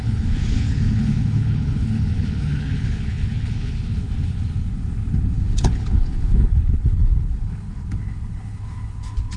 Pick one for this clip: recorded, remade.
remade